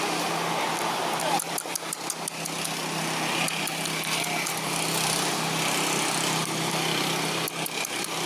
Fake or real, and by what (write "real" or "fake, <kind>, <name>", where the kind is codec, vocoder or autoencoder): real